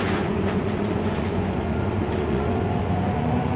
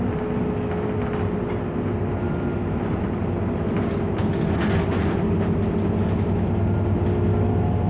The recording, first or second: second